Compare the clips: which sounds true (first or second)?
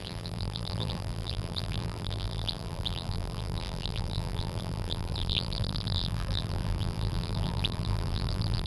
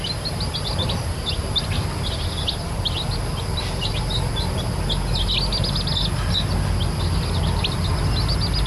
second